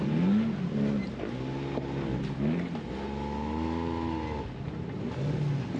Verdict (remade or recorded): recorded